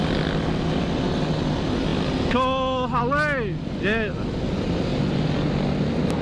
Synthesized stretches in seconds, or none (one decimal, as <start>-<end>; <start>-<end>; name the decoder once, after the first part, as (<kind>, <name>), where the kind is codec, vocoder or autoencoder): none